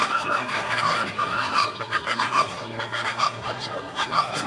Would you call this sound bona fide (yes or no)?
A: no